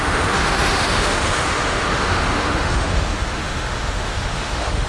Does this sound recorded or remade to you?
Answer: remade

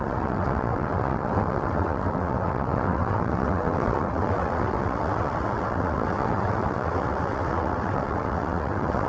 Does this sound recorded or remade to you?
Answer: remade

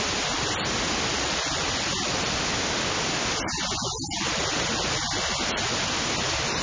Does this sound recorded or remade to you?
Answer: recorded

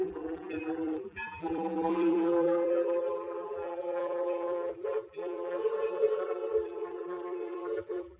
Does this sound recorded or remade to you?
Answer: remade